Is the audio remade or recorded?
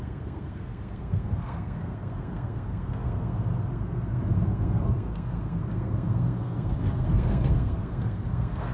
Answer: remade